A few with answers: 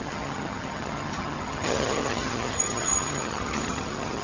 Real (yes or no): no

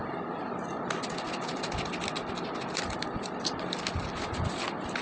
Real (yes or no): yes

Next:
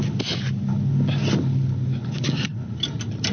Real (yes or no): yes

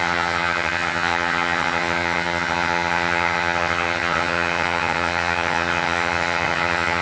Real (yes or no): no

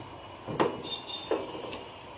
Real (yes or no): yes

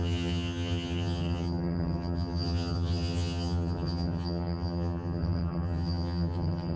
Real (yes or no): no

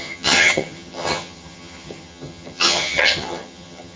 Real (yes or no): no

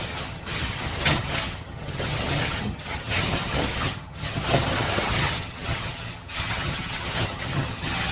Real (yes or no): no